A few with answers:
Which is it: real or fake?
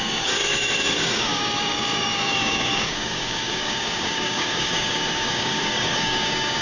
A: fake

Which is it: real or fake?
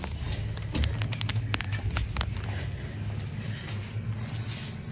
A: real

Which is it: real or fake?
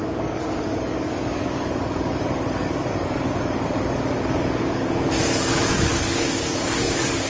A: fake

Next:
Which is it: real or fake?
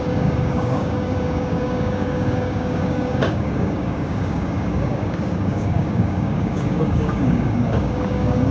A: fake